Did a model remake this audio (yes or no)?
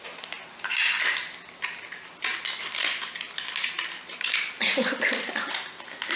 no